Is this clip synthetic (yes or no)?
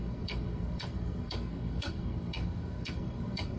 yes